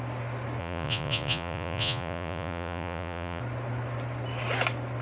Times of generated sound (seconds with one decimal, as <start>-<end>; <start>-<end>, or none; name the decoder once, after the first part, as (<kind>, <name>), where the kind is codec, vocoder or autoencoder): 0.6-3.4 (vocoder, Vocos)